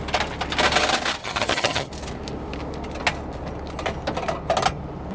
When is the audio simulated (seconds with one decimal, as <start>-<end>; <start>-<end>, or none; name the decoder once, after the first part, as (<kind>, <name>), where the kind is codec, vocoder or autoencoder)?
1.2-1.9 (vocoder, HiFi-GAN)